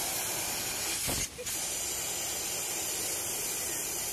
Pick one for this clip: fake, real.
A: real